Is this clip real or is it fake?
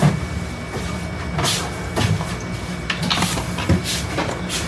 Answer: real